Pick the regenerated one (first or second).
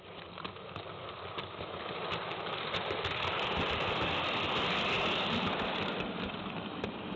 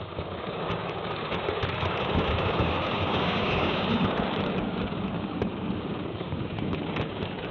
second